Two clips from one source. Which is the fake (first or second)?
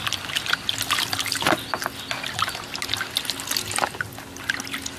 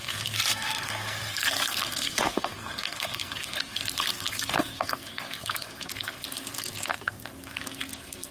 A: second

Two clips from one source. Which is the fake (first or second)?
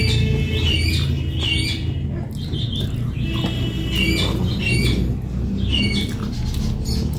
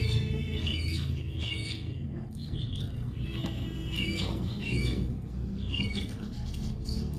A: second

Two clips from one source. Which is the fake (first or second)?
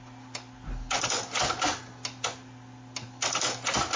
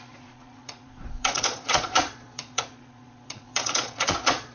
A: second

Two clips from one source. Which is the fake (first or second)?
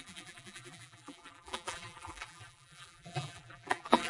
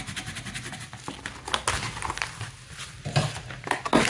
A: first